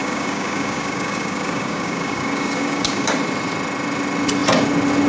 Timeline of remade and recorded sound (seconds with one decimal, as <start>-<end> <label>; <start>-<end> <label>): 0.0-3.1 remade; 3.1-5.1 recorded